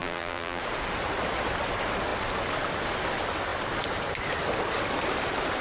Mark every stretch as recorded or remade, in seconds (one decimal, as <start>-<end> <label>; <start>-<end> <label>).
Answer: 0.0-0.6 remade; 0.6-5.6 recorded